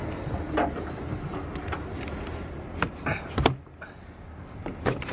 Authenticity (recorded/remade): recorded